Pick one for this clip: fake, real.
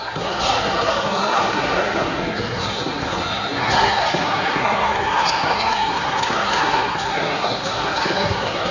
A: fake